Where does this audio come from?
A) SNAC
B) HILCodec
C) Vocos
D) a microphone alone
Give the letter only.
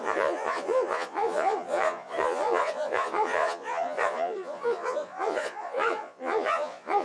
C